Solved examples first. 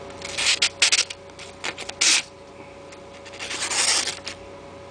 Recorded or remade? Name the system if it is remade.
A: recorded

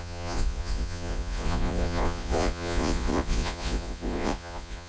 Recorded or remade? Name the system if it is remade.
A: remade, vocoder, Vocos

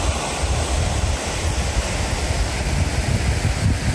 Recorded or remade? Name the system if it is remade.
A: recorded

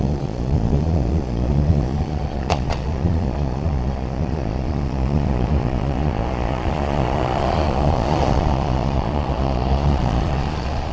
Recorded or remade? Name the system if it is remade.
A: remade, vocoder, Vocos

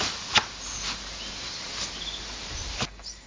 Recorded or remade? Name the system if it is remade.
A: recorded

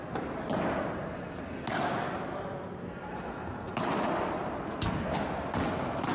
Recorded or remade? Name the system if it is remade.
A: recorded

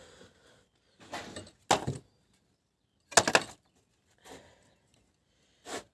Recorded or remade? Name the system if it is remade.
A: recorded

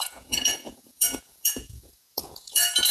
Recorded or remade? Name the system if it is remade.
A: remade, vocoder, Vocos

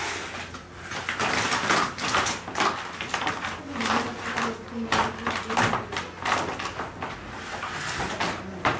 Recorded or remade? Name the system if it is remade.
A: recorded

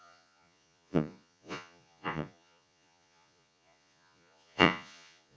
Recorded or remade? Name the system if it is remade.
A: remade, vocoder, Vocos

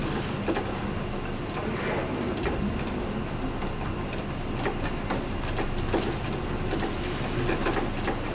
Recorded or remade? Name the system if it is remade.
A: recorded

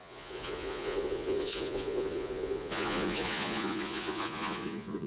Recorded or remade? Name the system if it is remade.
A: remade, vocoder, Vocos